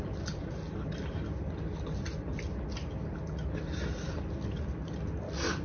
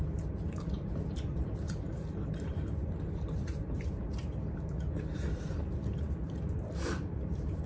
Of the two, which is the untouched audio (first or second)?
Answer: first